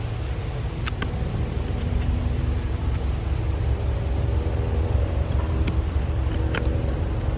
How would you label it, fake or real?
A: real